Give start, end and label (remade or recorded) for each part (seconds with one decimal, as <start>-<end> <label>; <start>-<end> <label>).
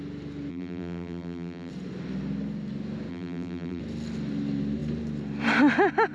0.0-0.5 recorded; 0.5-1.7 remade; 1.7-3.1 recorded; 3.1-3.8 remade; 3.8-6.1 recorded